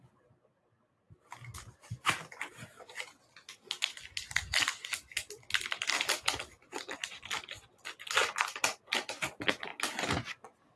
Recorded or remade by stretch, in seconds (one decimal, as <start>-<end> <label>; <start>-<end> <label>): 0.0-10.8 recorded